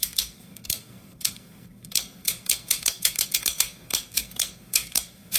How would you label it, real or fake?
fake